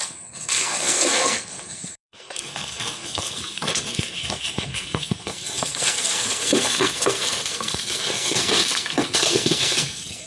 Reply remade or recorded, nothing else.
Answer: remade